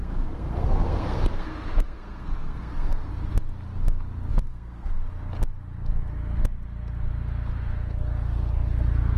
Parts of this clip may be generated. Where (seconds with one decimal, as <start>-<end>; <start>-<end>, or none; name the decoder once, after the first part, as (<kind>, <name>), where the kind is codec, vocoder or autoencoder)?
0.0-3.1 (codec, SNAC); 4.3-4.9